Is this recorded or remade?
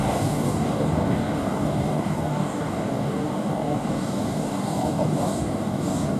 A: remade